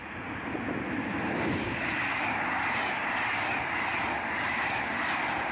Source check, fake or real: real